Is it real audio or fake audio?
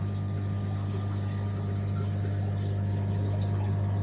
real